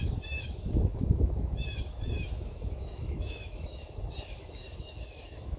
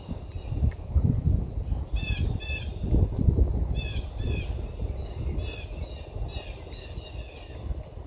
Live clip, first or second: second